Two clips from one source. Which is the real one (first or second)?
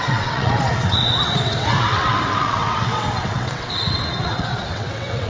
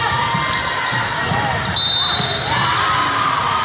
second